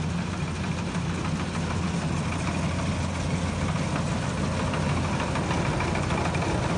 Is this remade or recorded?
recorded